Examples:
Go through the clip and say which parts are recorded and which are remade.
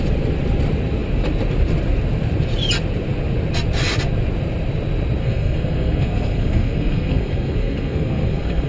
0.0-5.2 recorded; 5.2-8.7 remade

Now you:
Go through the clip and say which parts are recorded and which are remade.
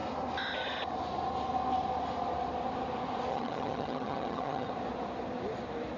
0.0-3.3 recorded; 3.3-4.7 remade; 4.7-6.0 recorded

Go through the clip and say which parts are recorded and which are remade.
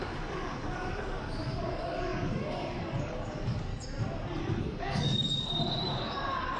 0.0-3.7 remade; 3.7-4.4 recorded; 4.4-6.6 remade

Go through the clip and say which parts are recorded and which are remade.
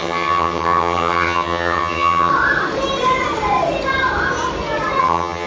0.0-2.3 remade; 2.3-5.0 recorded; 5.0-5.5 remade